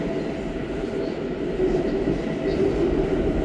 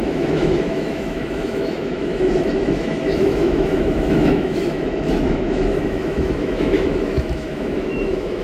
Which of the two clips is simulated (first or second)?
second